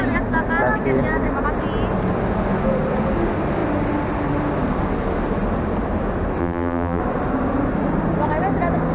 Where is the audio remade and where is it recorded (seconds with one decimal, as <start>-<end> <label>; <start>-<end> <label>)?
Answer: 0.0-6.4 recorded; 6.4-7.0 remade; 7.0-8.9 recorded